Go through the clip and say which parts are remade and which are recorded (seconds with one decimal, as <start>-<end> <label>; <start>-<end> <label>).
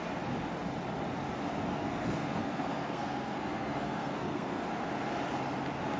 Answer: 0.0-1.7 recorded; 1.7-4.7 remade; 4.7-6.0 recorded